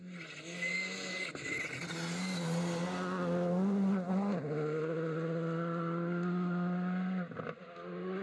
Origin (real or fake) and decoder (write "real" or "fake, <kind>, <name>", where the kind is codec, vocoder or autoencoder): real